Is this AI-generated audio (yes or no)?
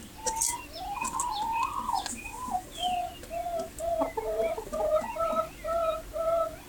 no